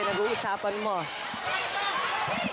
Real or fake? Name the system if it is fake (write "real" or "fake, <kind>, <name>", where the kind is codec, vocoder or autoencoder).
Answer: real